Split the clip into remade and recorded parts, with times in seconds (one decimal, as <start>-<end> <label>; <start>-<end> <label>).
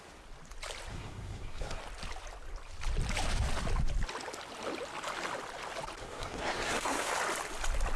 0.0-0.9 recorded; 0.9-1.8 remade; 1.8-6.0 recorded; 6.0-7.1 remade; 7.1-8.0 recorded